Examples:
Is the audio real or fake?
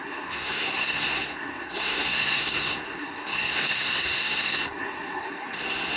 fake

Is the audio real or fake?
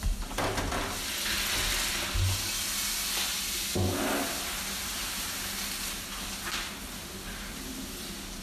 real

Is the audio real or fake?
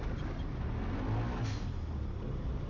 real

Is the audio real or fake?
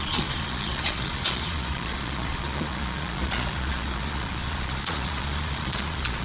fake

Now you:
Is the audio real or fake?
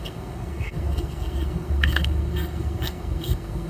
fake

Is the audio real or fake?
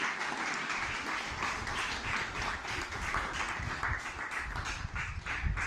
real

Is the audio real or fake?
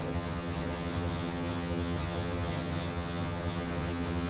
fake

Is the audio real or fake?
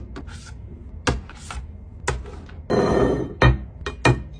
real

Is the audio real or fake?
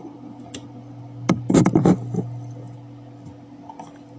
real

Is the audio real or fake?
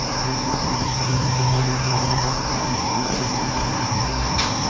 fake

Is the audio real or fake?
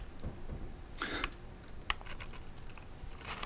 real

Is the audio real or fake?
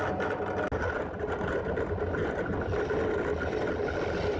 real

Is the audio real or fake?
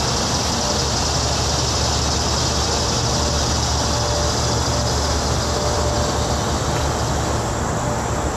real